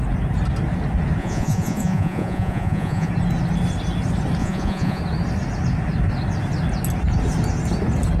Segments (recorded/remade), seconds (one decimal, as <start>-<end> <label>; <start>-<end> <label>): 0.0-1.2 recorded; 1.2-3.1 remade; 3.1-4.4 recorded; 4.4-5.0 remade; 5.0-8.2 recorded